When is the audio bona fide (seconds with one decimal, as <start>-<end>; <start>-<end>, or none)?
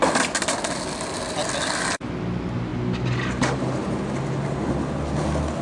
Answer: 0.0-5.6